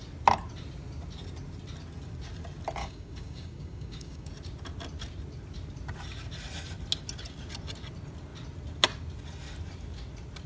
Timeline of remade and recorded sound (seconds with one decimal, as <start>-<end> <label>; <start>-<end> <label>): 0.0-2.8 recorded; 2.8-4.3 remade; 4.3-10.5 recorded